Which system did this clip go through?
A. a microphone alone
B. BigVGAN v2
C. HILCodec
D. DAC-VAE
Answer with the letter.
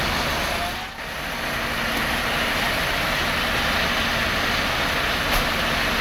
A